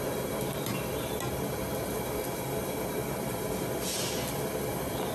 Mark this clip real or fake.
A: real